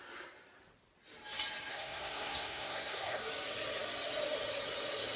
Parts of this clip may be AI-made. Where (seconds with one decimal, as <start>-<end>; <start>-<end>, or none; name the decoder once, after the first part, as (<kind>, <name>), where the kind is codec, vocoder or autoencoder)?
1.7-3.2 (codec, SNAC)